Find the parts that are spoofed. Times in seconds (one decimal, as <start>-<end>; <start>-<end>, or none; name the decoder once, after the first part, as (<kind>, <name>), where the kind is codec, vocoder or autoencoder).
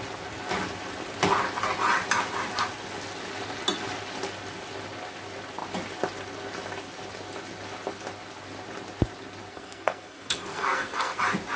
9.5-11.2 (codec, SNAC)